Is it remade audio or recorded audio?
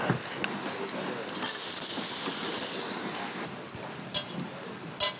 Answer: recorded